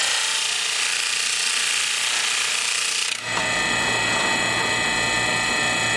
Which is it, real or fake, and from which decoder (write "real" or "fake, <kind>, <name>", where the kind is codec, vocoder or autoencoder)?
real